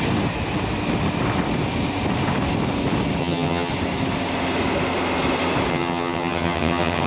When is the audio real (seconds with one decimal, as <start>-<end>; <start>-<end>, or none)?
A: 0.0-3.2; 3.7-5.7